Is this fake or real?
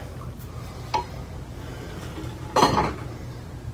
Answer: real